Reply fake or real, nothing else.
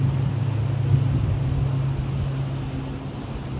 real